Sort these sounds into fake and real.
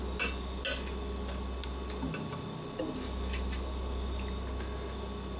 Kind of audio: real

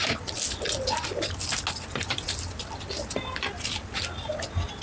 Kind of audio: real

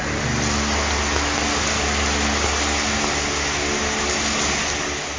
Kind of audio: real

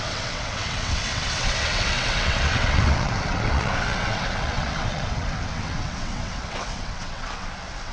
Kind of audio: fake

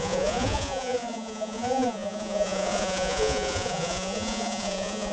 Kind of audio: fake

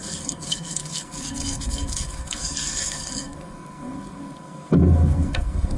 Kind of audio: fake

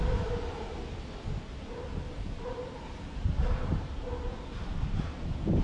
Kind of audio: fake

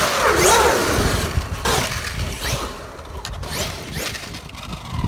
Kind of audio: real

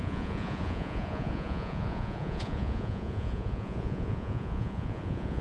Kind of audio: fake